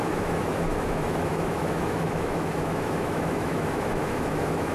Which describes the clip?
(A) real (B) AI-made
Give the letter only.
B